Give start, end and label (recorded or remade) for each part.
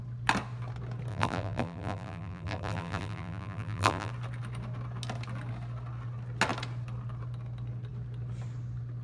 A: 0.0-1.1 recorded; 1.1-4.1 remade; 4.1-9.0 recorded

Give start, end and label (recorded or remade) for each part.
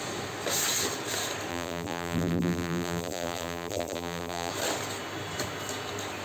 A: 0.0-1.5 recorded; 1.5-4.5 remade; 4.5-6.2 recorded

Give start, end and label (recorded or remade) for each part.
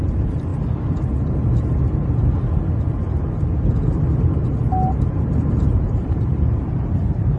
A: 0.0-0.5 remade; 0.5-4.9 recorded; 4.9-7.4 remade